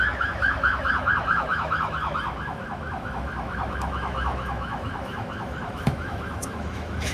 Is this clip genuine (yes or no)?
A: no